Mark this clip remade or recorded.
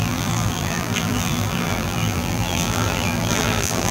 remade